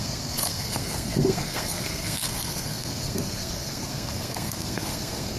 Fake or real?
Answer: fake